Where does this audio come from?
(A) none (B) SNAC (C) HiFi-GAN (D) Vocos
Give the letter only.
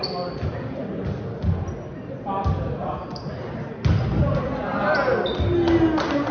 A